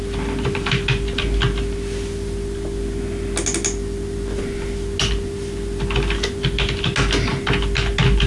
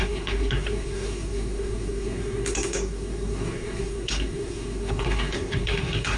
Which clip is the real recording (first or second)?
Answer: first